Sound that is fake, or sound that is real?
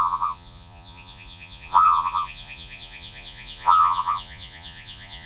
fake